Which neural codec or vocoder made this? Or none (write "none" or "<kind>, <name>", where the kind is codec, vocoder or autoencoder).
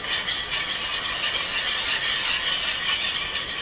none